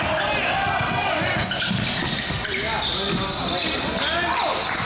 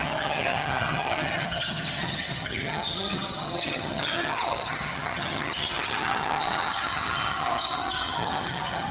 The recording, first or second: first